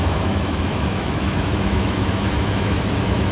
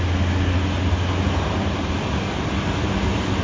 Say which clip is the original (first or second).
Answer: second